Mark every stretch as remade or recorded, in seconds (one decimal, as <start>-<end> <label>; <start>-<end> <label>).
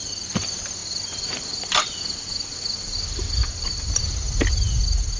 0.0-5.2 recorded